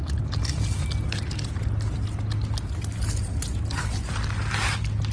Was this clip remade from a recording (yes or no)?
no